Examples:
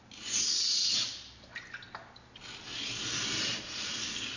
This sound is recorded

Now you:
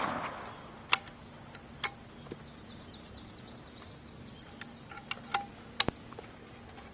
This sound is recorded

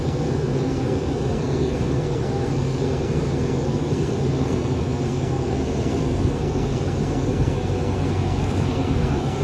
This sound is remade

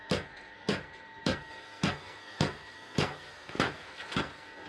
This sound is remade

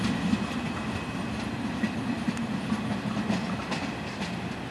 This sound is recorded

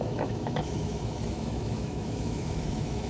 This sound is remade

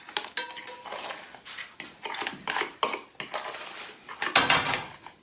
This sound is recorded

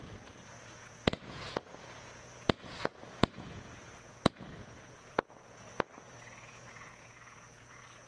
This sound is remade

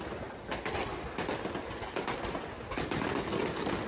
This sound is recorded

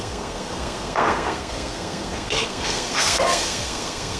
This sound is remade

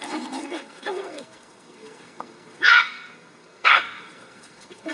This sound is remade